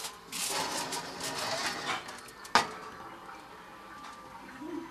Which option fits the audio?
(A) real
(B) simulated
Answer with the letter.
A